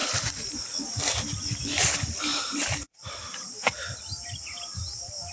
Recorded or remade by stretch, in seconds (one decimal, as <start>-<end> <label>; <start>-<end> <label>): 0.0-5.3 recorded